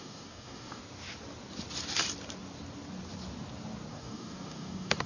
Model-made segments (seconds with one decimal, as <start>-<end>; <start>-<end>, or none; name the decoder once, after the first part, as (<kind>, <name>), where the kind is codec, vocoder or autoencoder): 0.0-0.8 (codec, DAC); 3.9-5.1